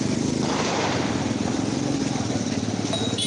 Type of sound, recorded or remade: recorded